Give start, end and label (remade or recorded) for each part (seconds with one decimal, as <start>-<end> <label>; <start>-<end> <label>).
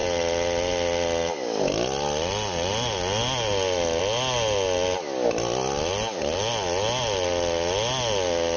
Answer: 0.0-8.6 recorded